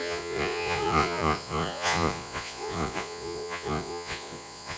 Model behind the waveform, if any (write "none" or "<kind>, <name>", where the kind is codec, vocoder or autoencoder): vocoder, Vocos